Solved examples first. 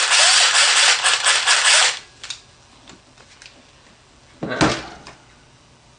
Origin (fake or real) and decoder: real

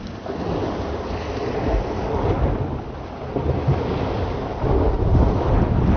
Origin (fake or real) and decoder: real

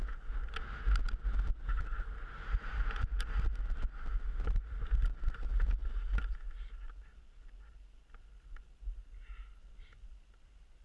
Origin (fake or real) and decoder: real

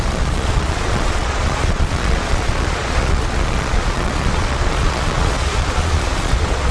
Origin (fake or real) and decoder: fake, vocoder, Vocos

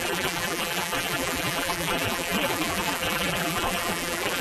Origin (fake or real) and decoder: fake, vocoder, BigVGAN v2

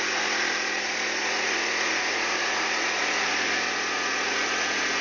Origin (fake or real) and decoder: fake, vocoder, Vocos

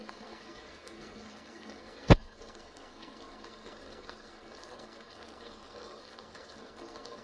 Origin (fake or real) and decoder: fake, codec, SNAC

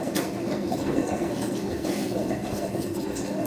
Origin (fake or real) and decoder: fake, codec, SNAC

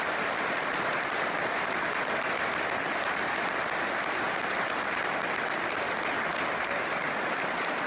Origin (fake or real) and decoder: real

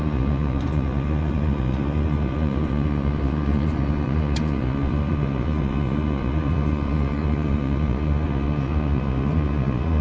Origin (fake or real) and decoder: fake, vocoder, Vocos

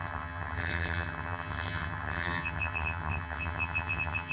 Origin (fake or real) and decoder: fake, vocoder, HiFi-GAN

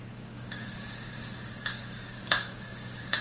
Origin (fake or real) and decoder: fake, codec, DAC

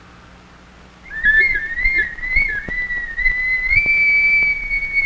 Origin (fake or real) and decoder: real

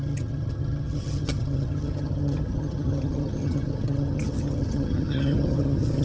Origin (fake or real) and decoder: fake, vocoder, HiFi-GAN